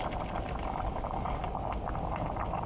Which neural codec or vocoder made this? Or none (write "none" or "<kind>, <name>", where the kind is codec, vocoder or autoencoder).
none